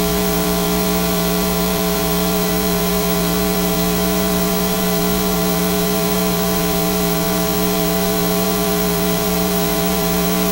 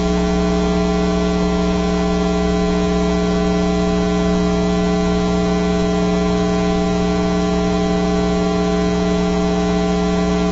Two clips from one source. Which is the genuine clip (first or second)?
second